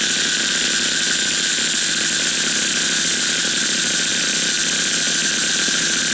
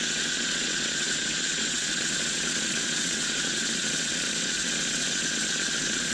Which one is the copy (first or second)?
second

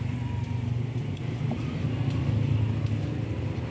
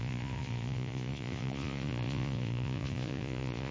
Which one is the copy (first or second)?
second